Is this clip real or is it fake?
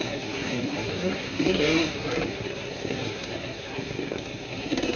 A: fake